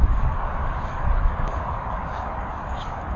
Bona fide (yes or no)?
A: no